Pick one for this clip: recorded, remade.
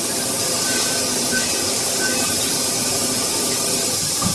recorded